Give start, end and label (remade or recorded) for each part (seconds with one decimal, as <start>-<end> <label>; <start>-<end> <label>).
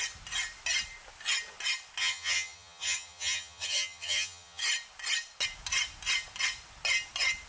0.0-2.0 recorded; 2.0-4.6 remade; 4.6-7.5 recorded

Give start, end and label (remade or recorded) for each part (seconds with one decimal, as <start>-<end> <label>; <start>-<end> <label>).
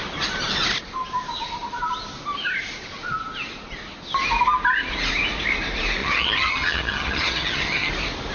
0.0-6.0 recorded; 6.0-7.9 remade; 7.9-8.3 recorded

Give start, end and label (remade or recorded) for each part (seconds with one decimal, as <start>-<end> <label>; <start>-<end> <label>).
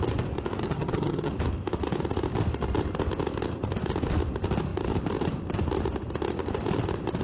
0.0-0.6 recorded; 0.6-1.3 remade; 1.3-7.2 recorded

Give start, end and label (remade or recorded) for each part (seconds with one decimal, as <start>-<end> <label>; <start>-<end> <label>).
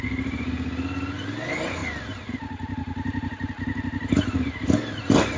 0.0-5.4 recorded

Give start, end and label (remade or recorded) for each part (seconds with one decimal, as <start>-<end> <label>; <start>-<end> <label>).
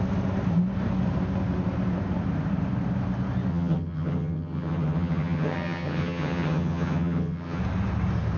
0.0-3.5 recorded; 3.5-7.6 remade; 7.6-8.4 recorded